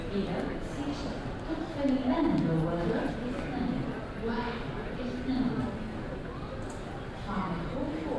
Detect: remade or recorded recorded